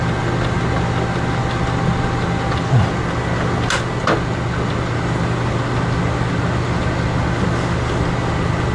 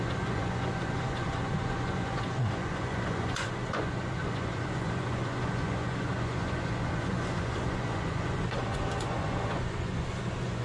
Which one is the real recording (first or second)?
first